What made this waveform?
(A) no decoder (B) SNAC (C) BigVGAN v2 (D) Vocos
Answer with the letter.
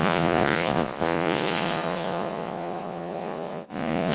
D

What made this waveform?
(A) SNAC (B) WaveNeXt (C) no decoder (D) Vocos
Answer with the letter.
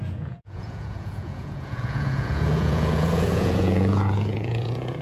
D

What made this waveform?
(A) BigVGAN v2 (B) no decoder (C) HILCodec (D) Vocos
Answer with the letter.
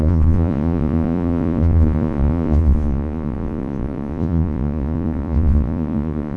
D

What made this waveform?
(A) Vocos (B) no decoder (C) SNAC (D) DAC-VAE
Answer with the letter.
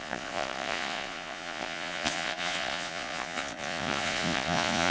A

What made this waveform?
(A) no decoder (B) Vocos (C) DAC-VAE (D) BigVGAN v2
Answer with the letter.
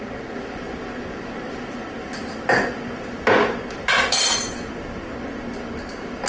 A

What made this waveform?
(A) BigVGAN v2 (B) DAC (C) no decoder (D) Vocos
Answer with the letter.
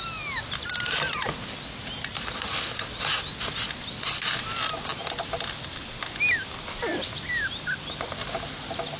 C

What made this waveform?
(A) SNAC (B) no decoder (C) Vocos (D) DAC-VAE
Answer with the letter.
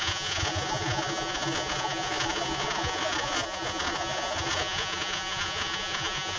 C